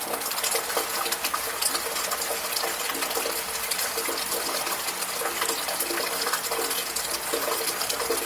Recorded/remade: recorded